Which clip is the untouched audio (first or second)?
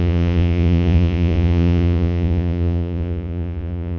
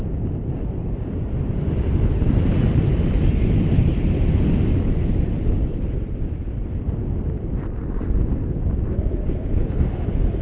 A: second